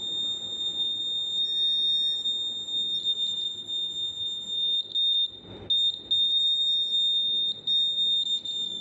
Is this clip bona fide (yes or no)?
yes